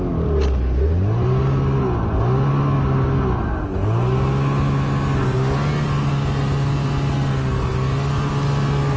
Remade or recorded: recorded